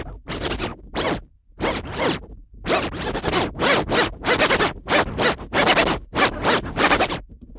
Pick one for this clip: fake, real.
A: fake